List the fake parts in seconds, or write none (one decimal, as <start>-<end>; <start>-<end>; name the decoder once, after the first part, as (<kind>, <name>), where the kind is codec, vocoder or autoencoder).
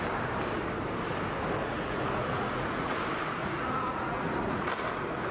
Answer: 1.6-3.0 (vocoder, Vocos); 3.4-4.7